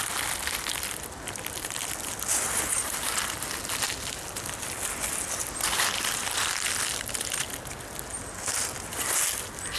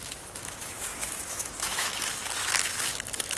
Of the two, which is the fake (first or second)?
second